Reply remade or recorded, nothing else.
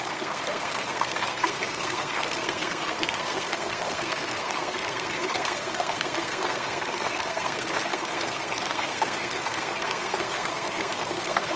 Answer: remade